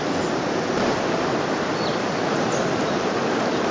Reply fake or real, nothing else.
real